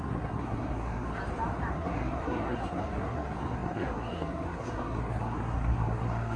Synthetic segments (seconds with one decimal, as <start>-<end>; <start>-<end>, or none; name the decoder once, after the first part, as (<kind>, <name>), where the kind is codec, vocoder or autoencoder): 0.0-1.2 (codec, SNAC); 1.7-6.4